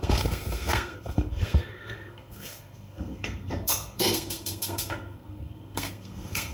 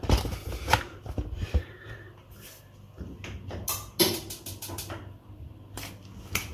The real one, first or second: second